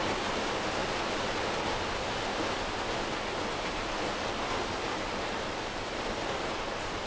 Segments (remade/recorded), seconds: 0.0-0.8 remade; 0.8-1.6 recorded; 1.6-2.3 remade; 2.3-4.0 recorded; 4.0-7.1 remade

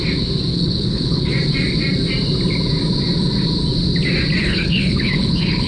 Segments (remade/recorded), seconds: 0.0-0.5 recorded; 0.5-1.3 remade; 1.3-4.4 recorded; 4.4-5.7 remade

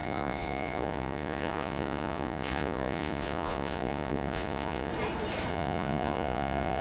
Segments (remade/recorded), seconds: 0.0-4.9 remade; 4.9-5.5 recorded; 5.5-6.8 remade

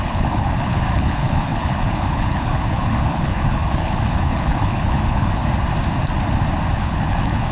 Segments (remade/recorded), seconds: 0.0-5.4 remade; 5.4-6.8 recorded; 6.8-7.5 remade

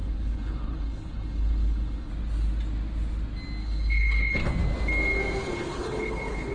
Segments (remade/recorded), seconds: 0.0-2.1 remade; 2.1-3.6 recorded; 3.6-4.3 remade; 4.3-5.4 recorded; 5.4-6.5 remade

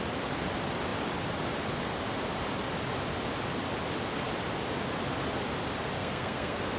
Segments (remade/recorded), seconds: 0.0-6.0 recorded; 6.0-6.8 remade

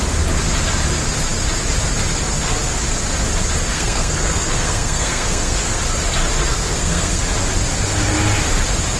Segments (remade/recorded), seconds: 0.0-3.7 recorded; 3.7-5.8 remade; 5.8-6.5 recorded; 6.5-7.2 remade; 7.2-9.0 recorded